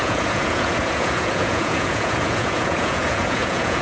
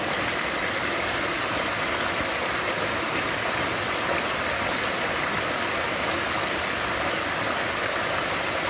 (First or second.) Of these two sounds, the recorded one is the second